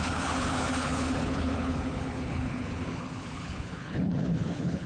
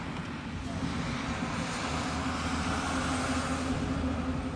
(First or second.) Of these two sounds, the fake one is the first